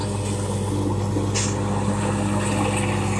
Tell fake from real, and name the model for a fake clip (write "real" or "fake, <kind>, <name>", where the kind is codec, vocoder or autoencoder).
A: real